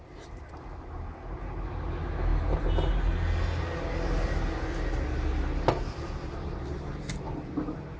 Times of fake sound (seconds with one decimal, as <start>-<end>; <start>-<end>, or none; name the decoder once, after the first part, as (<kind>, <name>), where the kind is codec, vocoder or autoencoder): none